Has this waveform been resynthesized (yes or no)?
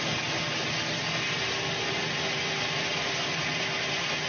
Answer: no